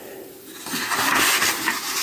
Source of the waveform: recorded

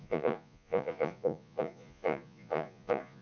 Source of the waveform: remade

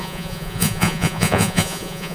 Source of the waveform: remade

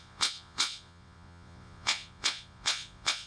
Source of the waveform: remade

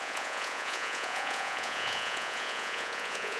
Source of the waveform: remade